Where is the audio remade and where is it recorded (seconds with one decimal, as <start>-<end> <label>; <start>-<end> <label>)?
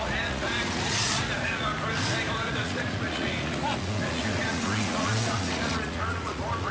0.0-1.7 remade; 1.7-2.5 recorded; 2.5-6.7 remade